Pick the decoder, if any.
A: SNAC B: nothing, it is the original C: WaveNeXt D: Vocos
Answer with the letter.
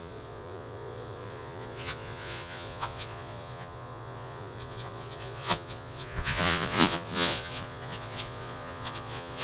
D